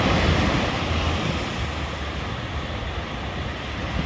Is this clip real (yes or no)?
yes